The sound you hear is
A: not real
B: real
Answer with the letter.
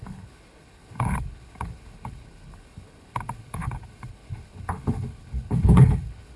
A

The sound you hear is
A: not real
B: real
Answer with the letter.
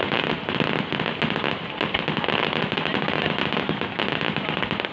B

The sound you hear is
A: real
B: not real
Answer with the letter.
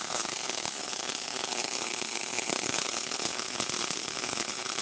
B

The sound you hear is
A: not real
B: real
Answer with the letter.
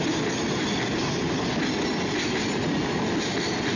B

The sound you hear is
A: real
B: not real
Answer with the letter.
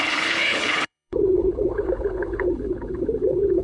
B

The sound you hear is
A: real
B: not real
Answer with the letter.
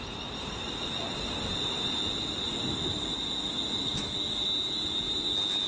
A